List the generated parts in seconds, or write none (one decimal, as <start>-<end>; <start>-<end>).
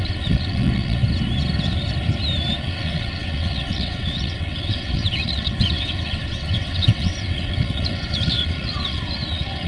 0.0-1.0; 2.6-9.7